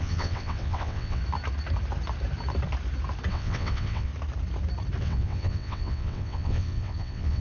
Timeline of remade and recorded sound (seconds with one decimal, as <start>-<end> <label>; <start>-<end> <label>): 0.0-1.2 remade; 1.2-3.3 recorded; 3.3-4.1 remade; 4.1-5.0 recorded; 5.0-7.4 remade